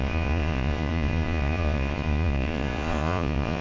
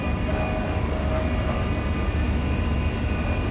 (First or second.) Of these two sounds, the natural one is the second